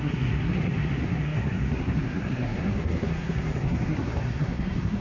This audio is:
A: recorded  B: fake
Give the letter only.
B